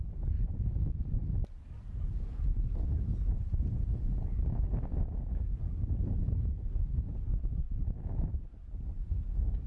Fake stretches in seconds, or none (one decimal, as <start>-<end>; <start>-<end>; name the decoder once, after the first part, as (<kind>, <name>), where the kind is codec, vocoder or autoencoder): none